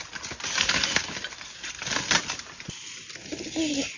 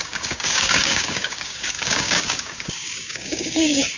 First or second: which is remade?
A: second